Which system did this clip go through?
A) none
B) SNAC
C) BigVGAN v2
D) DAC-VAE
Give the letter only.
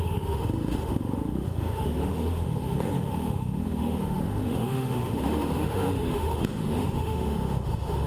D